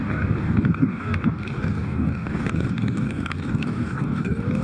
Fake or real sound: fake